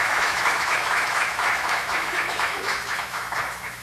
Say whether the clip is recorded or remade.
remade